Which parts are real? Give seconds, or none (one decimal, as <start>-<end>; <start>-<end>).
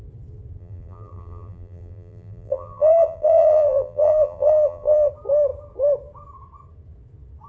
0.0-0.6; 5.1-7.5